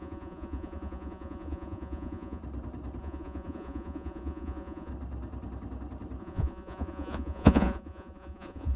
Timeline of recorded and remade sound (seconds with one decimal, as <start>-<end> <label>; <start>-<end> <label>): 0.0-2.4 remade; 2.4-3.0 recorded; 3.0-4.9 remade; 4.9-6.2 recorded; 6.2-8.8 remade